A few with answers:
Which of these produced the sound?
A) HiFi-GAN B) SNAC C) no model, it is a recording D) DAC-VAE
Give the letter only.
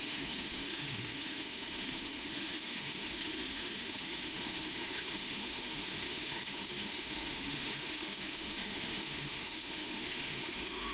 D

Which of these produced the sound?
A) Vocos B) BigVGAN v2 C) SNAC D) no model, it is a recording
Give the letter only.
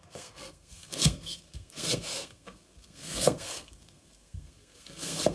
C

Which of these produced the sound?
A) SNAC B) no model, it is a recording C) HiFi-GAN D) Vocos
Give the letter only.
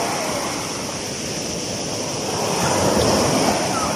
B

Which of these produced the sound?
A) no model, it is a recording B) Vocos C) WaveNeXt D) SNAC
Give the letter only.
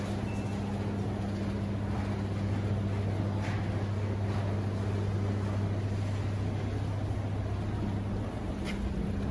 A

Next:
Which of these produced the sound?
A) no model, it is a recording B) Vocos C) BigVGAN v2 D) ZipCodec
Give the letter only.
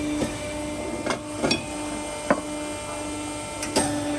A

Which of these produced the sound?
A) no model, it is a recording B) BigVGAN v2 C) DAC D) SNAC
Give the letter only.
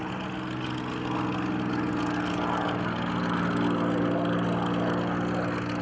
A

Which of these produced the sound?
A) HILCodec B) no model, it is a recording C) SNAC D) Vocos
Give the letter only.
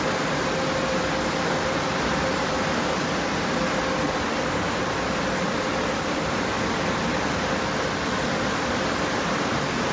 B